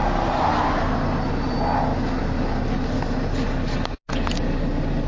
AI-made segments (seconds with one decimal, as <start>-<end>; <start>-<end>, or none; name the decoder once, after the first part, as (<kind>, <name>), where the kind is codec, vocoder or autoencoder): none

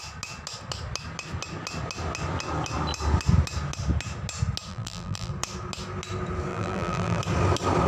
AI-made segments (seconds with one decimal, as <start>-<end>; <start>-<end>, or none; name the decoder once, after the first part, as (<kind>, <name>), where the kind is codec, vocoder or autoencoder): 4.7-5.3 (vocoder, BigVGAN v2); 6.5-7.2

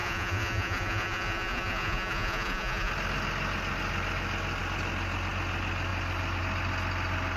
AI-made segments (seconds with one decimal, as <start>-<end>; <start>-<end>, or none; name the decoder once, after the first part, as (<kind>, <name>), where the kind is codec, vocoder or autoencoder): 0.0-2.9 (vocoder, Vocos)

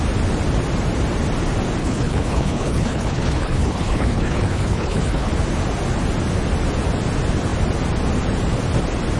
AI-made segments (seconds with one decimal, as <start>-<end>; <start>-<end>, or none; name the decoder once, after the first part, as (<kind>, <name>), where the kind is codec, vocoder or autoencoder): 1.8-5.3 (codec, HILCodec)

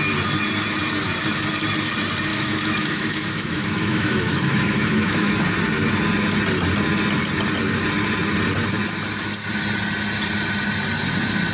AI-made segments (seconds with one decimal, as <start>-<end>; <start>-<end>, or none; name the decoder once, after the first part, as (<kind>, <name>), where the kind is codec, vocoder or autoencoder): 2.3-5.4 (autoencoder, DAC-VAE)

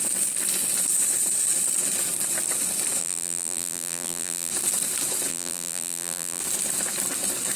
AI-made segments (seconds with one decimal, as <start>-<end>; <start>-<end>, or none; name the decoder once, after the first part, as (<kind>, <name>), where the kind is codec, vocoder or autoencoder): 3.0-4.5 (vocoder, BigVGAN v2); 5.3-6.4